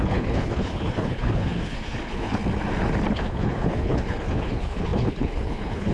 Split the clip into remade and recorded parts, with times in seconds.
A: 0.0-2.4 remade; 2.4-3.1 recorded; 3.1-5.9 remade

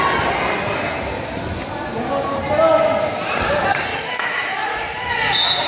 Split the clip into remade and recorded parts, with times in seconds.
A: 0.0-3.9 recorded; 3.9-5.1 remade; 5.1-5.7 recorded